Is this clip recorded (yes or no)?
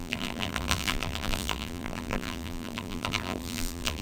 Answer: no